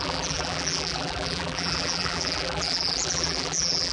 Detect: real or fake fake